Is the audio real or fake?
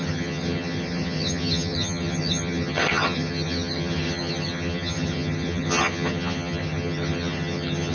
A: fake